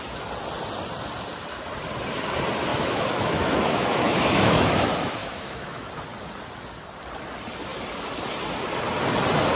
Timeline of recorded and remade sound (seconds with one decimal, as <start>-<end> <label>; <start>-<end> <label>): 0.0-2.7 recorded; 2.7-4.7 remade; 4.7-5.2 recorded; 5.2-5.9 remade; 5.9-9.6 recorded